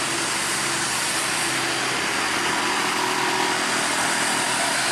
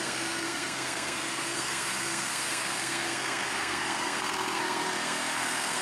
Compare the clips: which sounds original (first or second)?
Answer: first